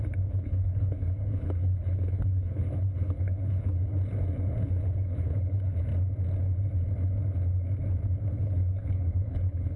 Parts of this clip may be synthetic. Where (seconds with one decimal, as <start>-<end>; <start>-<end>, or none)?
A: 0.0-3.9; 4.6-5.9; 8.3-9.8